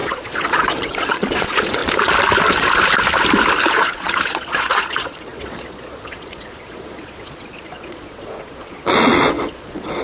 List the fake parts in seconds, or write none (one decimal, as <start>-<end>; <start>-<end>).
0.0-1.8; 3.7-10.0